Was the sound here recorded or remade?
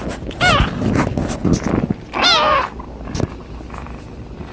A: recorded